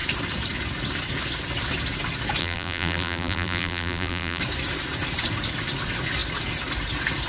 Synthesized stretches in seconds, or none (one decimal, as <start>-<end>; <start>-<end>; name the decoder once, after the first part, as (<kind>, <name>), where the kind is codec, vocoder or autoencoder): 2.4-4.4 (vocoder, BigVGAN v2)